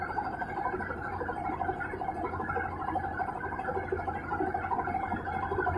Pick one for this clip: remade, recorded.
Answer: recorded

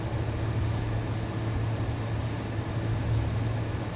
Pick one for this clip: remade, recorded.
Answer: recorded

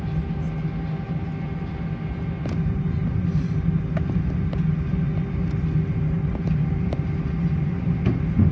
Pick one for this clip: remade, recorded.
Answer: recorded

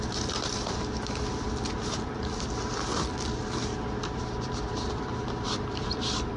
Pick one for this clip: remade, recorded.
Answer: remade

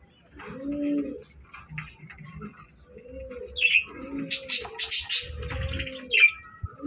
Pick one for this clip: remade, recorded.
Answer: recorded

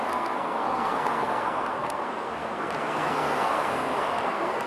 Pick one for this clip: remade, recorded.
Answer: remade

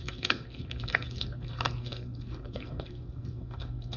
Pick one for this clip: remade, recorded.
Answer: remade